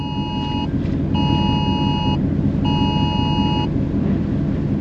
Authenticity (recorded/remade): recorded